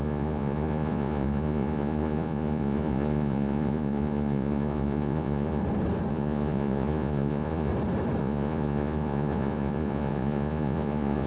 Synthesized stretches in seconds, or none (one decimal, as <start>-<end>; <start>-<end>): 0.0-5.6; 6.1-7.7; 8.2-11.3